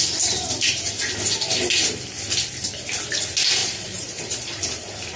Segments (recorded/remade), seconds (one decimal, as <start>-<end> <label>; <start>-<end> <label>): 0.0-3.6 recorded; 3.6-4.6 remade; 4.6-5.2 recorded